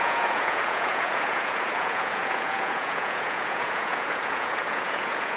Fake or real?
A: fake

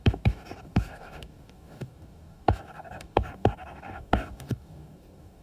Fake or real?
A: fake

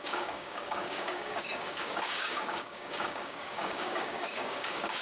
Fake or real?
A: fake